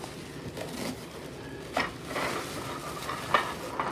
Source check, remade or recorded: recorded